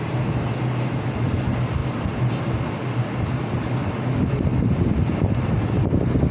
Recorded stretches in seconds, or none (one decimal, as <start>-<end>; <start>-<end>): 0.0-4.5; 5.6-6.3